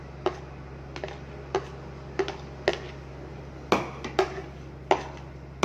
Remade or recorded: recorded